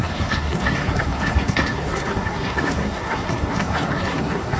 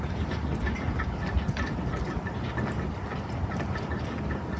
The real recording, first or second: second